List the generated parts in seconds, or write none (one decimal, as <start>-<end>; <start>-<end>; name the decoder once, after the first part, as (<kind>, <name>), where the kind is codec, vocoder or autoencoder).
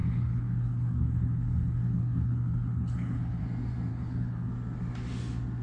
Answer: 0.0-3.4 (codec, HILCodec); 3.9-4.5